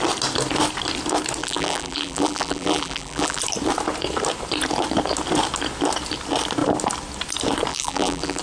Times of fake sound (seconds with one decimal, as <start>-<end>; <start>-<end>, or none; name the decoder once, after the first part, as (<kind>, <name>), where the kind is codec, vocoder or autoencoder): 1.4-3.4 (vocoder, BigVGAN v2); 7.7-8.4